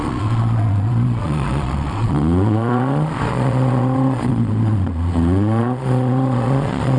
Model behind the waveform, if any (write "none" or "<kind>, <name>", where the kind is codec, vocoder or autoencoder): vocoder, Vocos